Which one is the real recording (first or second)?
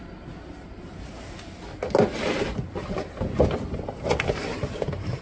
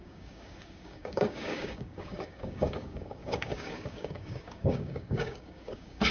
first